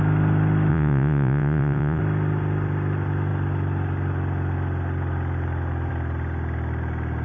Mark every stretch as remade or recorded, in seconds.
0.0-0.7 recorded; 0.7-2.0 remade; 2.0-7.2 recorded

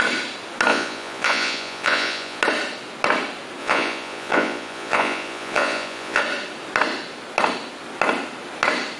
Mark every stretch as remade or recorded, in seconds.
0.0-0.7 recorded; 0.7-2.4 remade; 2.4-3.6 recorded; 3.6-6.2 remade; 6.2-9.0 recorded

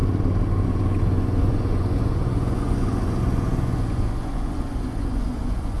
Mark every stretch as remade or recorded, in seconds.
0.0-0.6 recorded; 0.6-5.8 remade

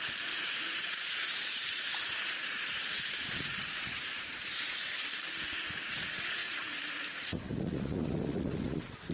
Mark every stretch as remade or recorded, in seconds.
0.0-4.8 remade; 4.8-5.4 recorded; 5.4-9.1 remade

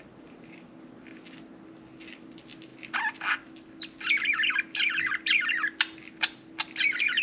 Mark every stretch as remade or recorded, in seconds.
0.0-7.2 recorded